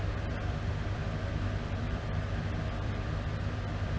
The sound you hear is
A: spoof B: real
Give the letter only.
A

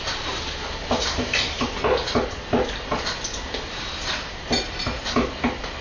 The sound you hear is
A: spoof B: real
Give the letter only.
B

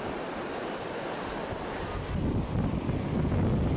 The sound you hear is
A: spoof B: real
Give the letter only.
B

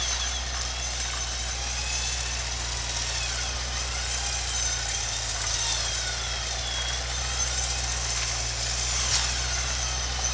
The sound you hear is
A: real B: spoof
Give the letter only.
A